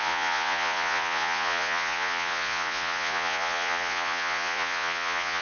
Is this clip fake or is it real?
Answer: fake